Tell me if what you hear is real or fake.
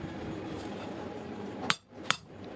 fake